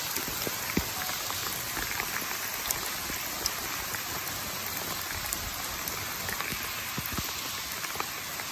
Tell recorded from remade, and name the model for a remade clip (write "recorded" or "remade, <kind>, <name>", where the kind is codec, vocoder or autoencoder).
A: recorded